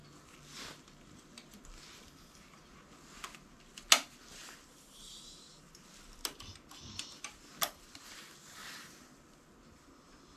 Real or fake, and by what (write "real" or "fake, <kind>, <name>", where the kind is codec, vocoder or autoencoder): real